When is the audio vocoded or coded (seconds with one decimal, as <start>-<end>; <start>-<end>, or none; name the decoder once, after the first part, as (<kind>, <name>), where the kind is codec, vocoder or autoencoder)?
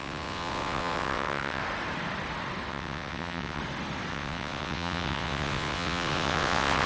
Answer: 0.0-1.6 (vocoder, WaveNeXt); 2.7-3.6; 4.1-6.9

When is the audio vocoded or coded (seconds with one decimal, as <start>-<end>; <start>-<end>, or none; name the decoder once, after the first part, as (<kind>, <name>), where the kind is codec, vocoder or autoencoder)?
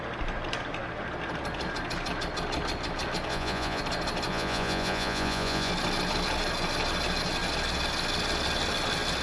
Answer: 3.3-3.8 (vocoder, Vocos); 4.3-5.7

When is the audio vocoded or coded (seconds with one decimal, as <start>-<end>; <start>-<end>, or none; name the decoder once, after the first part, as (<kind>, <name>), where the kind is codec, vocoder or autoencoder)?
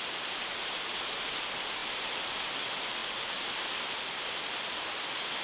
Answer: 1.8-2.4 (vocoder, BigVGAN v2)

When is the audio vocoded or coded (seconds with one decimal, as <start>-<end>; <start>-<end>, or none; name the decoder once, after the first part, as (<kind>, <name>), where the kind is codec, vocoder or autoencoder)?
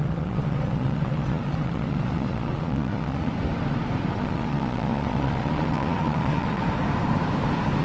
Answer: 0.0-3.3 (vocoder, Vocos); 4.1-6.6